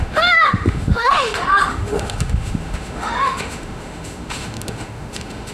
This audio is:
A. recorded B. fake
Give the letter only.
B